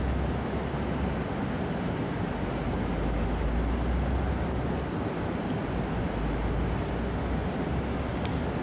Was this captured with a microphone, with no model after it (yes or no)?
yes